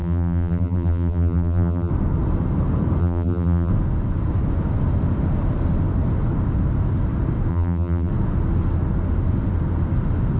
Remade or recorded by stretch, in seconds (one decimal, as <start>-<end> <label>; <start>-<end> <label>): 0.0-1.9 remade; 1.9-3.0 recorded; 3.0-3.7 remade; 3.7-7.5 recorded; 7.5-8.1 remade; 8.1-10.4 recorded